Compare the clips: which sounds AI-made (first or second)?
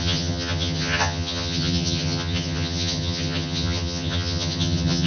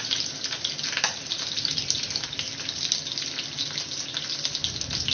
first